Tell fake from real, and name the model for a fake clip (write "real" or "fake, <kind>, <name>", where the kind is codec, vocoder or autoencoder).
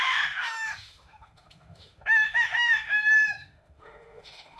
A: fake, autoencoder, DAC-VAE